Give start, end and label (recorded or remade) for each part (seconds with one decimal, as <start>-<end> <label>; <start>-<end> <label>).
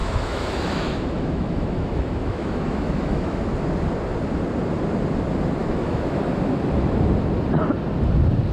0.0-3.4 remade; 3.4-5.6 recorded; 5.6-6.2 remade; 6.2-8.5 recorded